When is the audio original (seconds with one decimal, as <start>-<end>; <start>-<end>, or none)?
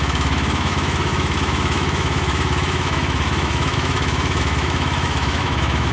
none